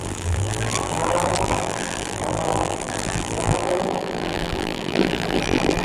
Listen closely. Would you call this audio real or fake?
fake